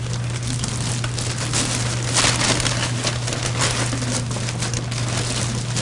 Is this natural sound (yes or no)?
yes